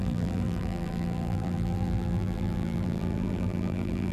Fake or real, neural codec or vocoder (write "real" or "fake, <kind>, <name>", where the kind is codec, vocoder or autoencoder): fake, vocoder, BigVGAN v2